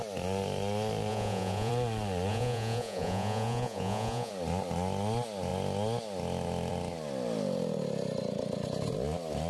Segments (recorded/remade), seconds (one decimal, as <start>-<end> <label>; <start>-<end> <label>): 0.0-1.1 recorded; 1.1-1.7 remade; 1.7-2.3 recorded; 2.3-4.3 remade; 4.3-9.5 recorded